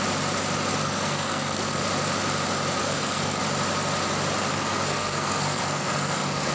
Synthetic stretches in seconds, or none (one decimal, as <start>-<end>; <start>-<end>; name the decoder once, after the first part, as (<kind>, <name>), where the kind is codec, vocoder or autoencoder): 0.8-1.8 (codec, SNAC); 2.8-3.4; 4.5-6.5